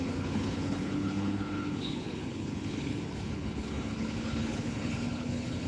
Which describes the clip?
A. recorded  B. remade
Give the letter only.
B